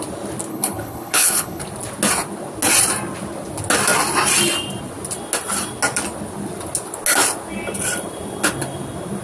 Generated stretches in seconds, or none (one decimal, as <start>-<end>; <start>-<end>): 0.5-1.6